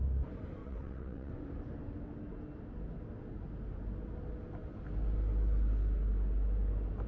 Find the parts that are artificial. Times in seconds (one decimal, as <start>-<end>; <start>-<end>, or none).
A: 0.6-1.3